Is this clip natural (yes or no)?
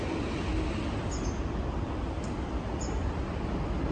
yes